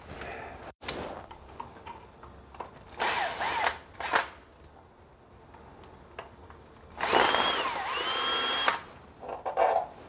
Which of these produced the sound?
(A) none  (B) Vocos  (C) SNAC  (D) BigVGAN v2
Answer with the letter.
A